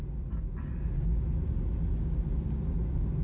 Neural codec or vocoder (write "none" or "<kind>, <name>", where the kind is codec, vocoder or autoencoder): none